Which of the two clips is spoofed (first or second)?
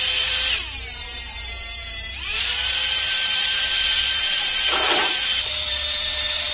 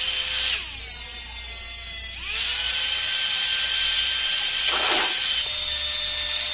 first